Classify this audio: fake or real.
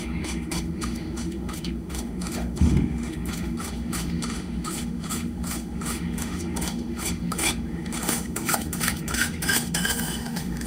fake